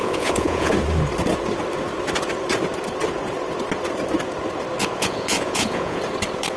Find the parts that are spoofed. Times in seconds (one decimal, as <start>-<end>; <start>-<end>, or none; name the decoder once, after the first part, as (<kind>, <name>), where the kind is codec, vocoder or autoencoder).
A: 0.0-0.7 (vocoder, Vocos); 4.8-6.0

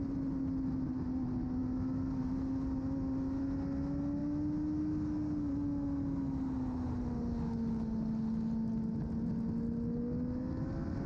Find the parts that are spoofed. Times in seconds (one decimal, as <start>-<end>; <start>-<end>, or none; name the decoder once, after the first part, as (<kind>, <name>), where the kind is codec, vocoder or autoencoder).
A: none

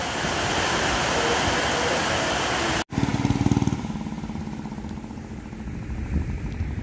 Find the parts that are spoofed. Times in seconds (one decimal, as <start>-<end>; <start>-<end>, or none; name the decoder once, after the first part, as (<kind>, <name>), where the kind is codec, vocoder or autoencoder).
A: none

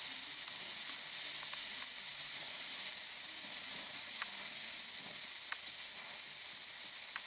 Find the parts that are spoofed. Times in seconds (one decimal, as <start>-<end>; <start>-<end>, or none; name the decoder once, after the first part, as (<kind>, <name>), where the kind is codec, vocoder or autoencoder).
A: 2.1-4.0 (vocoder, BigVGAN v2)

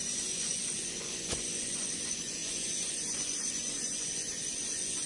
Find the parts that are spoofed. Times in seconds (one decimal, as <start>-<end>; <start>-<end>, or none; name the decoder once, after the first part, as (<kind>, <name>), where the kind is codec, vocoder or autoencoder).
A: 0.0-5.1 (vocoder, Vocos)

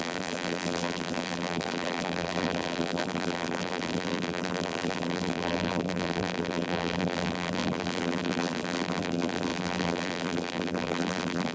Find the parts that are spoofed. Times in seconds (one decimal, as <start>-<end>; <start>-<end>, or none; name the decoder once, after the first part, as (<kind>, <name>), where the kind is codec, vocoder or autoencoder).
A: 0.0-11.5 (vocoder, BigVGAN v2)

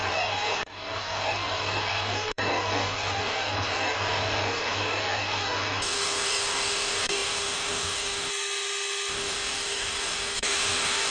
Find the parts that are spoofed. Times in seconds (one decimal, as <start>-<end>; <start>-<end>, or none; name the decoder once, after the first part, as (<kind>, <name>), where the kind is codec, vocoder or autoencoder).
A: 0.0-8.3 (codec, DAC); 9.1-11.1